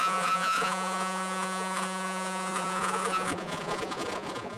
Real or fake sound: fake